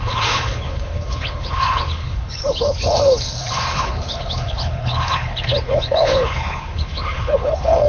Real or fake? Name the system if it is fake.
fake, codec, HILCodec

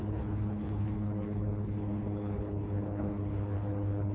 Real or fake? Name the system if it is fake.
fake, codec, HILCodec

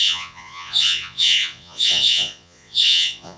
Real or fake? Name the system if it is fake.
fake, vocoder, Vocos